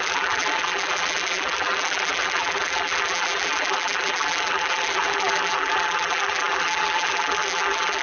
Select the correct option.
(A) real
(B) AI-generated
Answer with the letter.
B